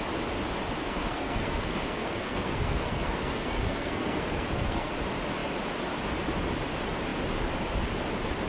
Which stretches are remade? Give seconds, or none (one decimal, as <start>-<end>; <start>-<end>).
0.8-4.9